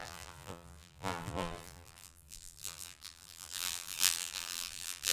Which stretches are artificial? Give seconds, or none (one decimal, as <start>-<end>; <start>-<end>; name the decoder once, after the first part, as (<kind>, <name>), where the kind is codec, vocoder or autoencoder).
0.0-5.1 (vocoder, BigVGAN v2)